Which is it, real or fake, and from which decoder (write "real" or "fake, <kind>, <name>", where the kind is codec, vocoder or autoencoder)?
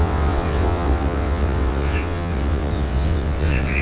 fake, vocoder, WaveNeXt